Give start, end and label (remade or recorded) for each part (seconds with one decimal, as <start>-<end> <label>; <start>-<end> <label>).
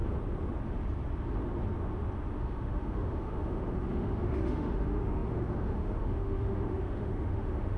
0.0-2.4 recorded; 2.4-7.8 remade